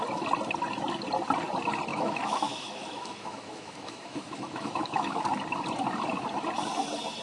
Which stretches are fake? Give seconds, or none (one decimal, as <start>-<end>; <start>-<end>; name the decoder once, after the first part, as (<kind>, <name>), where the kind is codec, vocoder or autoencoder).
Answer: 1.9-5.2 (autoencoder, DAC-VAE)